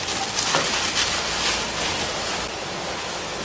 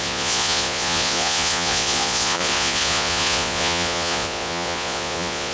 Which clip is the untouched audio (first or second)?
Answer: first